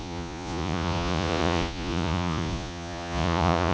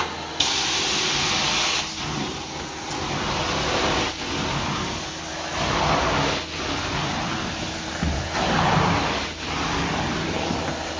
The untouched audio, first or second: second